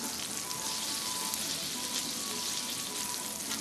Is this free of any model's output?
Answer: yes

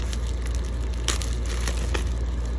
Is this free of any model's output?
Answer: yes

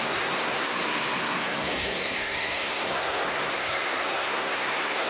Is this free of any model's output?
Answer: no